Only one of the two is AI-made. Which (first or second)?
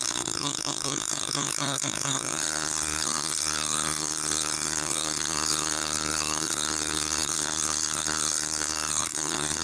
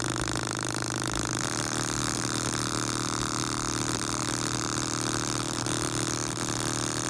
first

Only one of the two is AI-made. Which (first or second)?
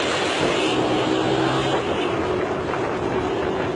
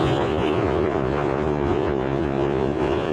second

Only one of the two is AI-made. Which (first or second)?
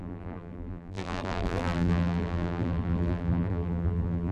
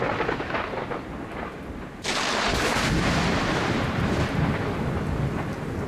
first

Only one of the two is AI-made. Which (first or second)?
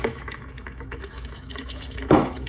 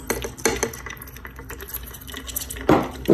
first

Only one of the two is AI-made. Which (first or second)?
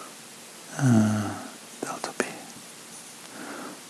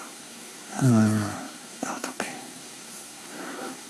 second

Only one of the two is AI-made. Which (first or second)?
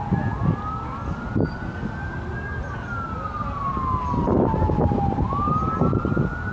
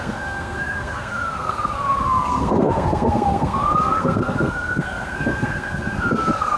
second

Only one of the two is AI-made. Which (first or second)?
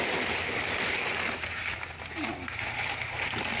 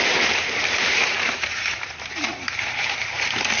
second